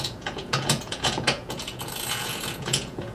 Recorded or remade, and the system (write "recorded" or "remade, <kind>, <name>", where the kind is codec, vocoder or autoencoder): remade, vocoder, Vocos